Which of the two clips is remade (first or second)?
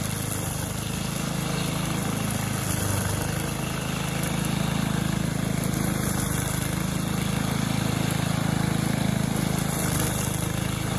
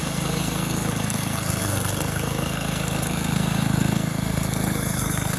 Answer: second